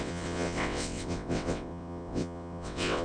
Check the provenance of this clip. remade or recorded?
remade